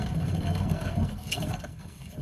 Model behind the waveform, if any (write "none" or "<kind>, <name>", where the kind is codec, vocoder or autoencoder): codec, SNAC